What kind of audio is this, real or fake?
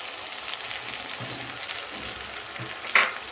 real